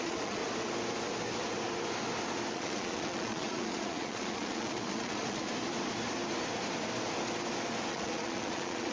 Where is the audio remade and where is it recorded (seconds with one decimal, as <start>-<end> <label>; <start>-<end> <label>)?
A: 0.0-0.4 remade; 0.4-2.5 recorded; 2.5-5.5 remade; 5.5-7.9 recorded; 7.9-8.9 remade